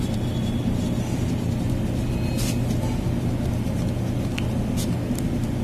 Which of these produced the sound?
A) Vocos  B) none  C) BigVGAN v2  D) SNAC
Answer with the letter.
B